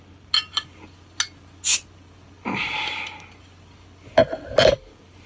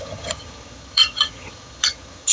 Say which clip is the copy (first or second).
second